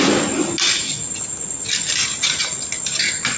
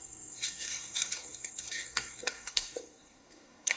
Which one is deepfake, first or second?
second